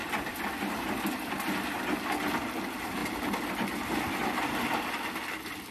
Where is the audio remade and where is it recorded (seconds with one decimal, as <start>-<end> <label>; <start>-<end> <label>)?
0.0-5.7 recorded